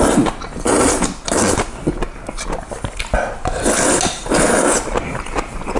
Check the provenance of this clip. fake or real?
real